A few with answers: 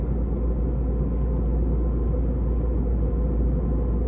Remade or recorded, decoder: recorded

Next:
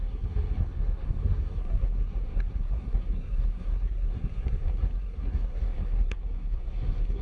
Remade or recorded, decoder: remade, codec, SNAC